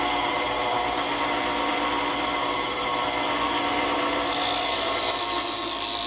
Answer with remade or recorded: recorded